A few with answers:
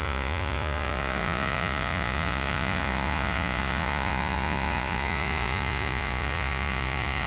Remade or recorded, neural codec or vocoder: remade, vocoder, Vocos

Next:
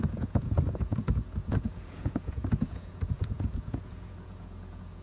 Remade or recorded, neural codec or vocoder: remade, vocoder, Vocos